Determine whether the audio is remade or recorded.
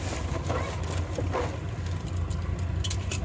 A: recorded